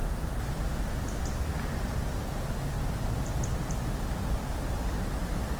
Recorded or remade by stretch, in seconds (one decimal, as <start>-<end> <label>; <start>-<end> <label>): 0.0-5.6 recorded